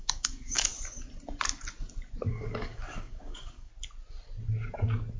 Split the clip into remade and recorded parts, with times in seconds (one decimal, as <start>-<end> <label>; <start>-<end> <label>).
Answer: 0.0-0.7 remade; 0.7-2.3 recorded; 2.3-3.7 remade; 3.7-5.2 recorded